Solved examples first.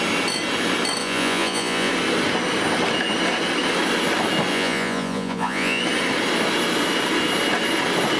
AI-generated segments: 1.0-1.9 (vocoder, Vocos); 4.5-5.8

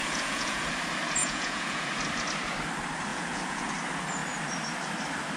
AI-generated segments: 0.0-0.7 (vocoder, Vocos); 1.2-1.9; 3.1-3.7

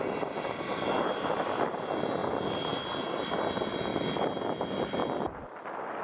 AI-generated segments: none

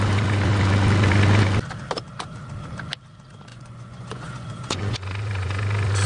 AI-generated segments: 3.5-5.6 (vocoder, Vocos)